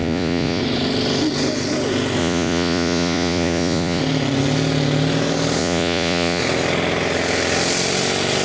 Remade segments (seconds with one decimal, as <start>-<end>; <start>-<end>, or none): 0.0-0.6; 2.2-4.0; 5.6-6.4